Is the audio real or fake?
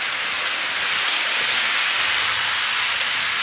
real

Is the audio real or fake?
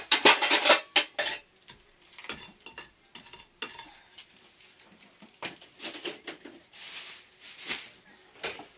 real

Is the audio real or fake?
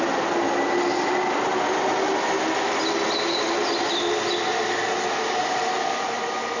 real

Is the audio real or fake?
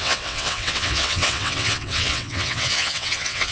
fake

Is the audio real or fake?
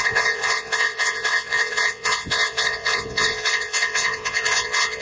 fake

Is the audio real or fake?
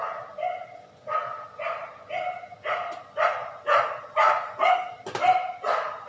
real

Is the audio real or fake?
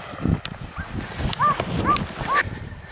real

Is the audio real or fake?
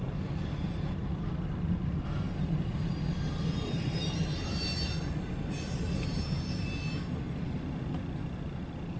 real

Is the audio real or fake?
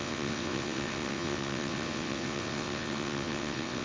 fake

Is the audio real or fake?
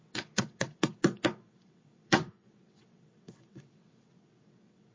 fake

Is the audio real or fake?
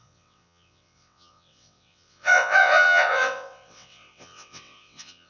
fake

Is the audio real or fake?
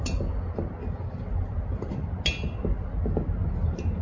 real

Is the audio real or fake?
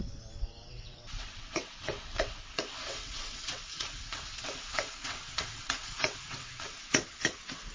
fake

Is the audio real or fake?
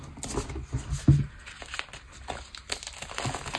real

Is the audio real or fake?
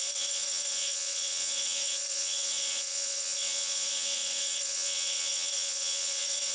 fake